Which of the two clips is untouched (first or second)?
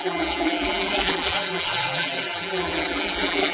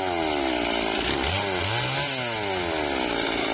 second